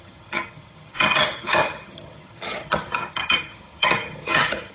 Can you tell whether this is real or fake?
fake